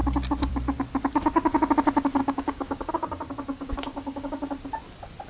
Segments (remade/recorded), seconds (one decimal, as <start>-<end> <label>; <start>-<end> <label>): 0.0-2.2 recorded; 2.2-2.9 remade; 2.9-3.5 recorded; 3.5-4.4 remade; 4.4-5.3 recorded